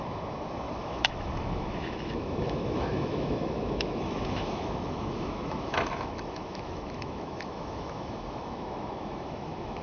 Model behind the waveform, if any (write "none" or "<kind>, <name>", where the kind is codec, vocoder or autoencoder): autoencoder, DAC-VAE